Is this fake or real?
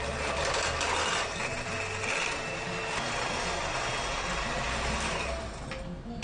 real